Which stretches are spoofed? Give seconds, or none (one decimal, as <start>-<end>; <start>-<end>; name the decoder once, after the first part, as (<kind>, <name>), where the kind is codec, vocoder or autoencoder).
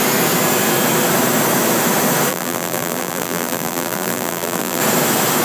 2.3-4.8 (vocoder, BigVGAN v2)